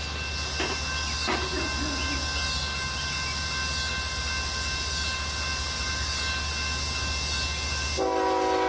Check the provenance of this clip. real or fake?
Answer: real